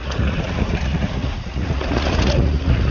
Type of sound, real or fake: fake